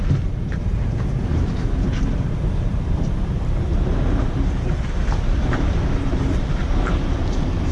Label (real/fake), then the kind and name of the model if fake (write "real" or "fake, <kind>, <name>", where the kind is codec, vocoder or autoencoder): fake, vocoder, BigVGAN v2